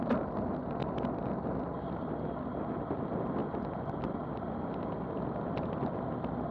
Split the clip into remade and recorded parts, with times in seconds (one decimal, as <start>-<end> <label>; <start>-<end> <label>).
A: 0.0-6.5 recorded